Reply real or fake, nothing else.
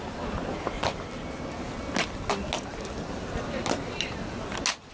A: real